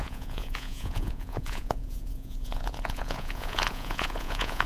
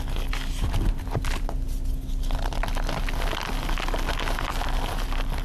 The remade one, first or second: first